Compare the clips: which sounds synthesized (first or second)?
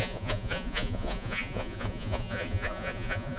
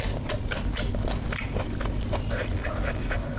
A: first